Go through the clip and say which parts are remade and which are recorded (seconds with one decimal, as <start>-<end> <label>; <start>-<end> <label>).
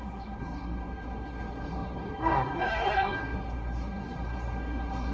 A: 0.0-5.1 remade